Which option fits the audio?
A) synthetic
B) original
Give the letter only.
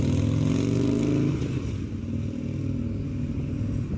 B